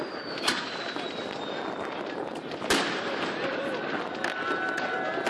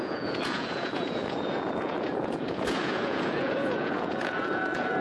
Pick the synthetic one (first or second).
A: second